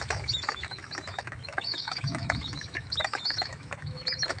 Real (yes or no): no